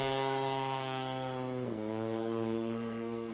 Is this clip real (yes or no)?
no